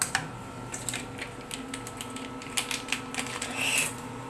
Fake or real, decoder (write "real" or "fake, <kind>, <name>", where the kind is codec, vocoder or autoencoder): real